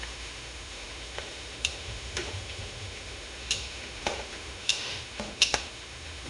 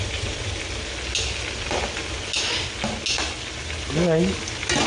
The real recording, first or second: second